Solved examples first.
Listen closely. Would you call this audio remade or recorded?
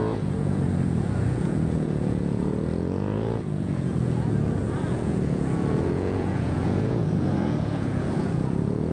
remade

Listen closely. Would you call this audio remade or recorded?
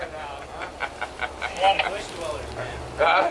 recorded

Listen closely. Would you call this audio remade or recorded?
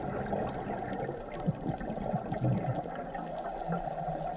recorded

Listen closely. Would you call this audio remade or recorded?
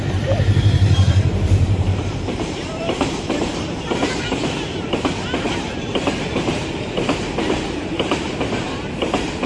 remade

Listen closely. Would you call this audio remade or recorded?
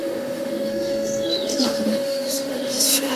remade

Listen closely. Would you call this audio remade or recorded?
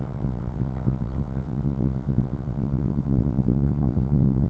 remade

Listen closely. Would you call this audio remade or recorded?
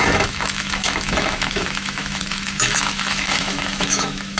remade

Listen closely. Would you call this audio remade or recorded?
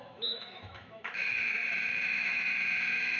remade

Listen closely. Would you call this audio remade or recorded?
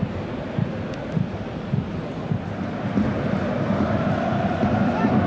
recorded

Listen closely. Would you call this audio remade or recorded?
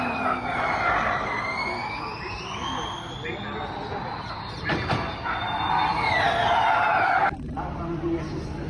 recorded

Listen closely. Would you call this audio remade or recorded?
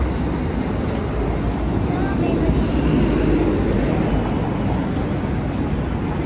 recorded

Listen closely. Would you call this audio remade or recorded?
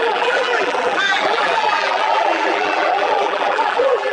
remade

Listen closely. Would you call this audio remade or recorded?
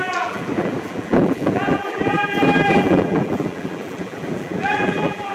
remade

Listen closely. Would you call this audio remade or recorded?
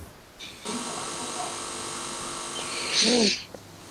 recorded